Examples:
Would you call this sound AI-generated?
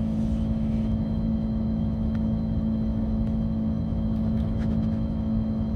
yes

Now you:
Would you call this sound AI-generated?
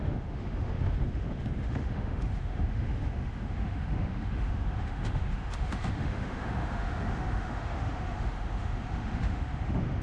yes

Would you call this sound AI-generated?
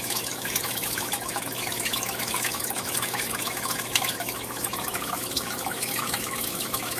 yes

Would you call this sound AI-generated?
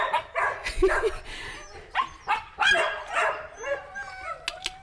no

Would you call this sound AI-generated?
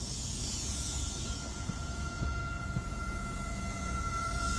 yes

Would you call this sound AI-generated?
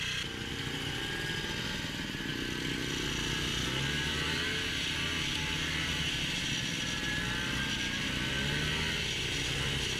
no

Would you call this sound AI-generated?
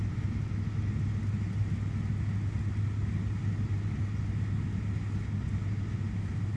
no